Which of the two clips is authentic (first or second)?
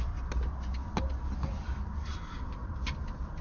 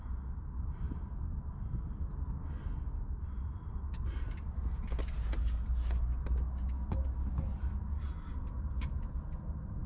second